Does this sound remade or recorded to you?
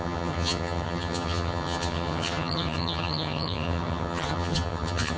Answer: remade